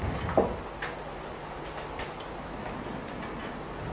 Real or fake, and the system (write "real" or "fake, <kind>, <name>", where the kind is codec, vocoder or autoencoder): real